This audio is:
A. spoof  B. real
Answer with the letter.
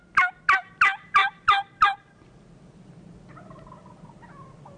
B